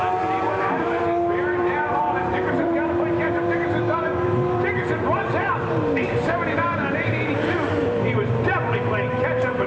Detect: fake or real fake